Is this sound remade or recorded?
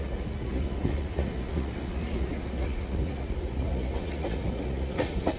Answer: remade